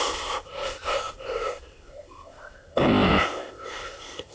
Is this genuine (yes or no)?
no